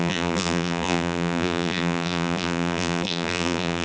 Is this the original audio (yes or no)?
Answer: no